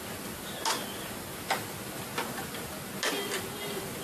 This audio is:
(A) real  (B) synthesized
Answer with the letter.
A